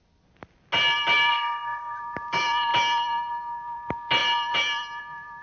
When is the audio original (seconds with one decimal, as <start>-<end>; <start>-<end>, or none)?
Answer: 0.0-1.3; 2.0-5.4

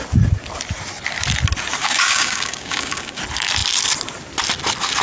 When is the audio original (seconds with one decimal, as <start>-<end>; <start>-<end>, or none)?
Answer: 0.0-1.8; 3.2-5.0